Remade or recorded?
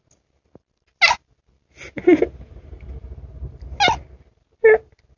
recorded